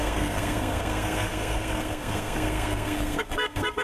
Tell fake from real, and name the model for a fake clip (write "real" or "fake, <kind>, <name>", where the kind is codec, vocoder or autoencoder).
fake, codec, SNAC